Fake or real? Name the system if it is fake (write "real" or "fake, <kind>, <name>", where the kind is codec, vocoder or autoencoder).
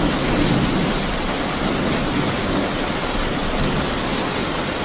real